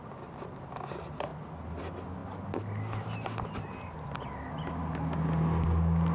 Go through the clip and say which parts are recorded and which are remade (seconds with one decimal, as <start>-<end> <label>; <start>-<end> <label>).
0.0-6.1 recorded